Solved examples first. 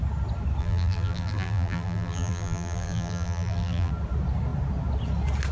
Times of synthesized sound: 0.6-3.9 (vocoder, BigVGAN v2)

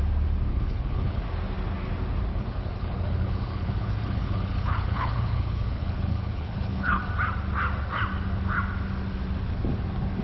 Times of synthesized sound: 0.5-1.2 (codec, HILCodec); 2.3-7.0

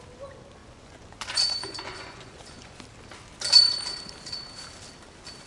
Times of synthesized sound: 0.6-2.8 (vocoder, Vocos)